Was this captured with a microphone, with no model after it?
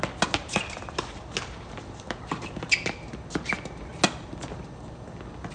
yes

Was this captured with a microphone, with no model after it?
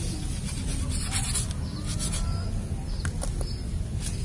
yes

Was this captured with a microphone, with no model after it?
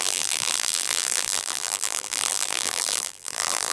no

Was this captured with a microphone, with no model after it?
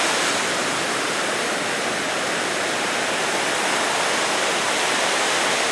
yes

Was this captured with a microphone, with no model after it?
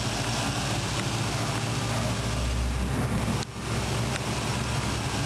yes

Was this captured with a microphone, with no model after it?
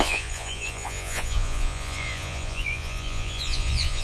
no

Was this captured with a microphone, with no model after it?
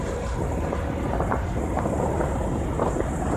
yes